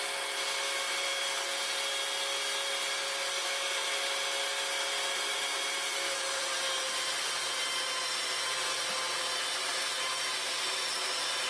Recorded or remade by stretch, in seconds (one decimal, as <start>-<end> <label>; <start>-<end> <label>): 0.0-11.5 recorded

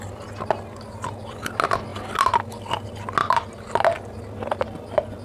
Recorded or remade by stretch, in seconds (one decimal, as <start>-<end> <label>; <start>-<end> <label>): 0.0-3.2 recorded; 3.2-3.7 remade; 3.7-5.2 recorded

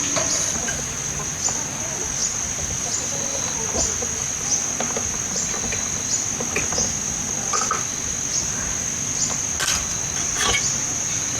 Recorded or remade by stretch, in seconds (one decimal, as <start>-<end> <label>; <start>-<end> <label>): 0.0-11.4 recorded

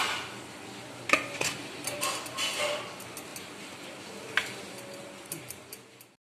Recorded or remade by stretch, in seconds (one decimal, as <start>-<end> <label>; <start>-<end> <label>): 0.0-6.2 recorded

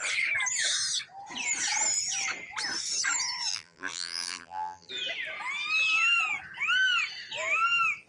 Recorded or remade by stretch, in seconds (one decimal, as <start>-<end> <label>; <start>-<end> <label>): 0.0-3.5 recorded; 3.5-4.9 remade; 4.9-8.1 recorded

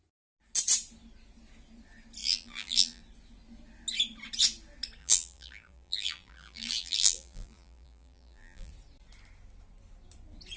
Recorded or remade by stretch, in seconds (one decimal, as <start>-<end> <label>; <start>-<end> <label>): 0.0-2.2 recorded; 2.2-3.0 remade; 3.0-5.0 recorded; 5.0-8.7 remade; 8.7-10.6 recorded